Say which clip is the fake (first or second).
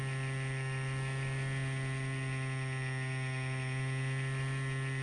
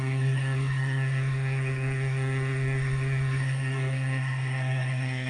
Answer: second